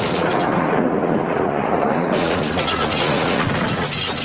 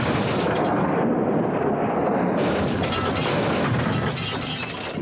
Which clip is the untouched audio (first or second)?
second